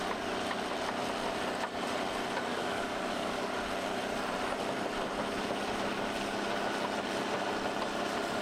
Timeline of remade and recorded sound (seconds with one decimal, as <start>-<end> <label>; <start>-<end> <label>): 0.0-2.5 recorded; 2.5-3.5 remade; 3.5-8.4 recorded